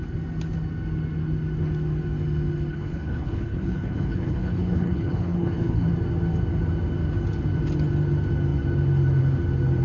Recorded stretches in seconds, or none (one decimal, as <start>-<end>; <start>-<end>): 0.0-2.7; 5.9-9.8